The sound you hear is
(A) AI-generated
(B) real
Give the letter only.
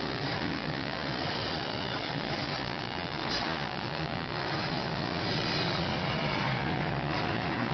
A